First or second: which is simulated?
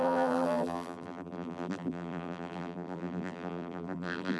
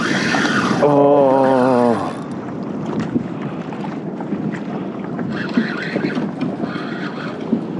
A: first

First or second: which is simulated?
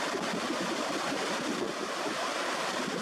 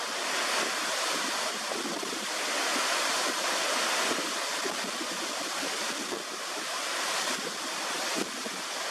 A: first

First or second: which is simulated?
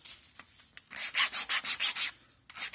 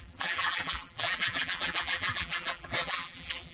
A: second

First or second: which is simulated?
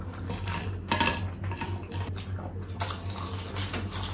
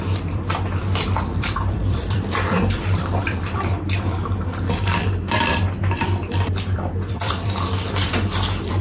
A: second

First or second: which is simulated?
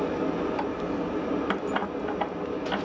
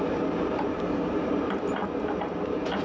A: second